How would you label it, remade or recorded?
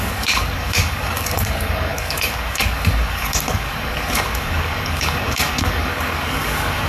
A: remade